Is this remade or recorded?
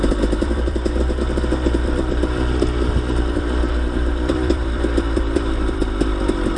remade